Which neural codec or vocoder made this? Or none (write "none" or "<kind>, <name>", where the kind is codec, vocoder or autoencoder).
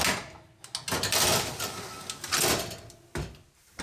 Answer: none